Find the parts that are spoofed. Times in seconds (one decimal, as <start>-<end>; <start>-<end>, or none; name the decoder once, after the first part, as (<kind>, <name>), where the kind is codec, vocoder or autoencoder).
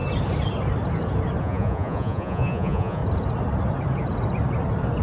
1.4-3.0 (vocoder, Vocos)